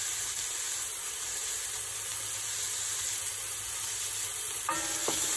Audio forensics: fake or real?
real